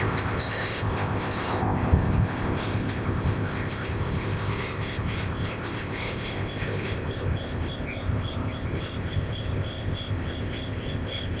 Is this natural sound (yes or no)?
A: no